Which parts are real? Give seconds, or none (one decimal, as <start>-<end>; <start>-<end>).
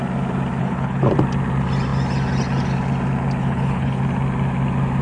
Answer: 0.0-0.6; 1.1-3.4; 4.0-5.0